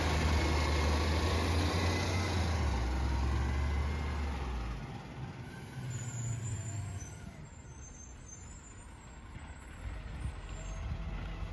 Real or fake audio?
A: real